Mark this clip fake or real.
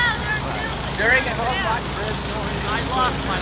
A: real